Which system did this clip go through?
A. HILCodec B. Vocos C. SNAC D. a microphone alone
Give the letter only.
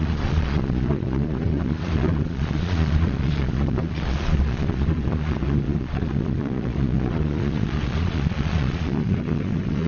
B